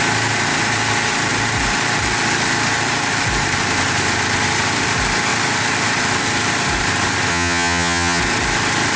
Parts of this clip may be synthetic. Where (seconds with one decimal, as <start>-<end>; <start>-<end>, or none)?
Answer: 7.3-8.2